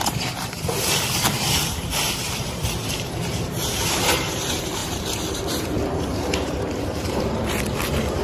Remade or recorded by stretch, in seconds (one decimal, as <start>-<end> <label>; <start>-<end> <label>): 0.0-8.2 remade